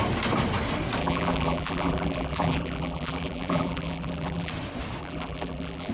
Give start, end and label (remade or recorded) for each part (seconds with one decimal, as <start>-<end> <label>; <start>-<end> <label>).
0.0-1.0 recorded; 1.0-4.5 remade; 4.5-5.0 recorded; 5.0-5.9 remade